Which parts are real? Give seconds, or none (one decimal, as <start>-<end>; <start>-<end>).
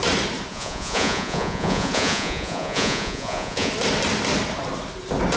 0.0-0.5; 3.7-5.4